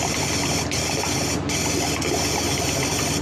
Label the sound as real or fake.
real